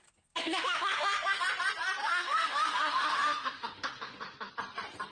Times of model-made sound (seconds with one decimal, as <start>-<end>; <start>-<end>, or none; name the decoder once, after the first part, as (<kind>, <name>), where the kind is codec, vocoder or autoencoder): 0.4-1.4 (autoencoder, DAC-VAE); 2.0-4.5